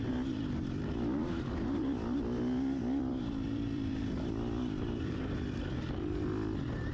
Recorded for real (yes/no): no